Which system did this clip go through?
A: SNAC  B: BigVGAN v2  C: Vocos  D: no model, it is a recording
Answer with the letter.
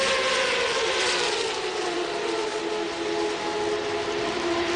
D